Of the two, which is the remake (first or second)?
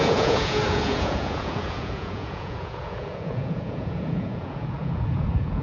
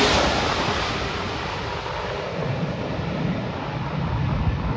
first